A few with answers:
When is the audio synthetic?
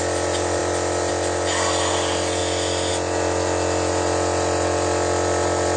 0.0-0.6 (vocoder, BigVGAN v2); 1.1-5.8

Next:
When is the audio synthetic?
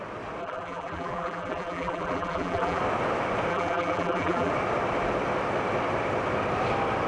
0.4-2.8 (vocoder, BigVGAN v2); 3.5-4.5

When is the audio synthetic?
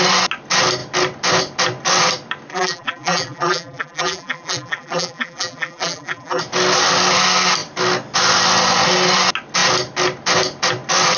2.5-6.4 (vocoder, BigVGAN v2)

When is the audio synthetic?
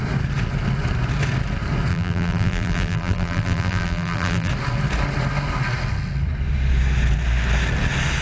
1.9-4.5 (vocoder, BigVGAN v2)